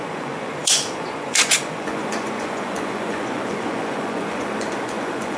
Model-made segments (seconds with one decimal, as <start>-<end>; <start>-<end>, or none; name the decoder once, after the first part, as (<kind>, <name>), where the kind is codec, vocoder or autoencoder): 0.0-5.4 (vocoder, Vocos)